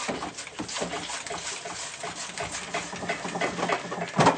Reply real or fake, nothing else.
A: real